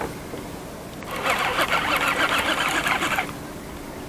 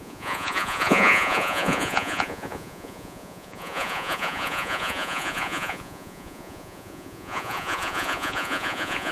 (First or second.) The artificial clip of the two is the second